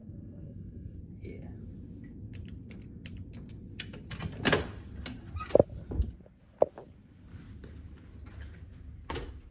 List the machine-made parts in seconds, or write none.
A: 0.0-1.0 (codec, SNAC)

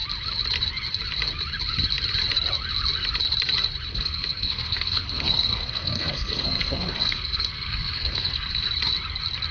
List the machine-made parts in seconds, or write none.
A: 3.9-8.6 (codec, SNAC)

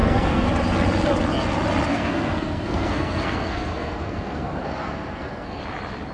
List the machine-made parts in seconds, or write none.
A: 0.0-0.5 (codec, SNAC); 1.9-5.6

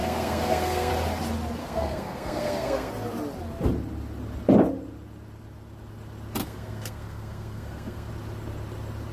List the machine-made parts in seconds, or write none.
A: 0.0-0.9 (codec, SNAC); 1.6-2.9; 6.4-8.1